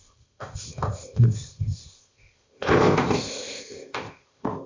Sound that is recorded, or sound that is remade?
remade